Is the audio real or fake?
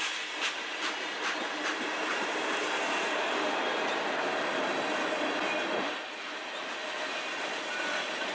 real